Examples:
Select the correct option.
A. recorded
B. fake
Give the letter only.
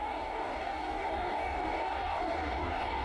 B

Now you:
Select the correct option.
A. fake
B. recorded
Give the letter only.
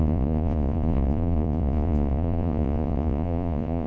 A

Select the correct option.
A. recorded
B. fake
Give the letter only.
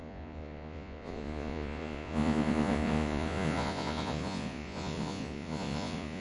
B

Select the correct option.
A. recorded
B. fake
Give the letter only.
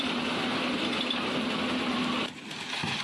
A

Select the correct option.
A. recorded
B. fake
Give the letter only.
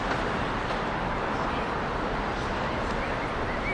A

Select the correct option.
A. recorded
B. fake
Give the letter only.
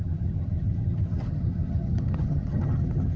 B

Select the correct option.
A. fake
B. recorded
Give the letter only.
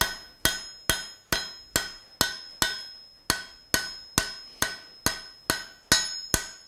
B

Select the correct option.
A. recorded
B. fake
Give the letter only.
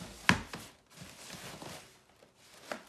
A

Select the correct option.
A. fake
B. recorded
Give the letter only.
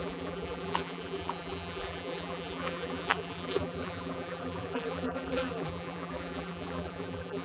A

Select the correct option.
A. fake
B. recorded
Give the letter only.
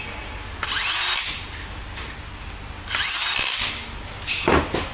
B